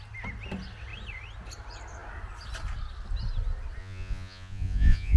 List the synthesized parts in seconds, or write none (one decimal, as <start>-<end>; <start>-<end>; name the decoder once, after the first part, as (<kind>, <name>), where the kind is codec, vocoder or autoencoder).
3.8-5.2 (vocoder, Vocos)